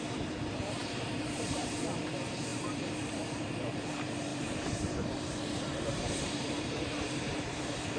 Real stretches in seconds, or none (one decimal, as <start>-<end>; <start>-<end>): none